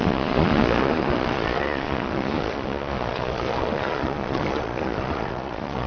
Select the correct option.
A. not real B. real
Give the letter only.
A